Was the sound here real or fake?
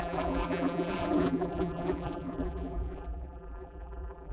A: fake